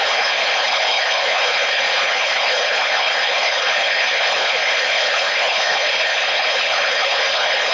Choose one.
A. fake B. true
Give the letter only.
A